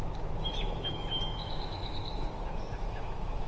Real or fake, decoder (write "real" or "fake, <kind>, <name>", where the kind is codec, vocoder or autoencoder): fake, autoencoder, DAC-VAE